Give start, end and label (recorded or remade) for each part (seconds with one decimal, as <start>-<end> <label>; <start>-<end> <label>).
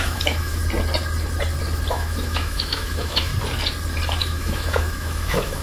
0.0-0.6 remade; 0.6-1.9 recorded; 1.9-3.3 remade; 3.3-4.2 recorded; 4.2-5.6 remade